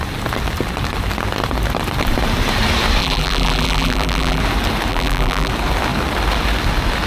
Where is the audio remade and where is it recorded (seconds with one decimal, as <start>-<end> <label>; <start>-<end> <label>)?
0.0-3.0 recorded; 3.0-4.4 remade; 4.4-4.9 recorded; 4.9-5.5 remade; 5.5-7.1 recorded